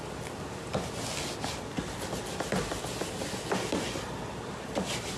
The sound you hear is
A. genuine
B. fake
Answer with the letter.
A